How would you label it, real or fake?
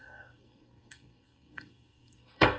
fake